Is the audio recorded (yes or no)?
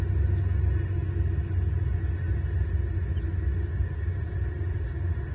yes